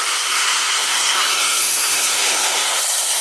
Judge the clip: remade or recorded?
remade